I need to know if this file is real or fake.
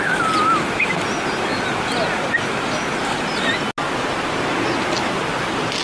real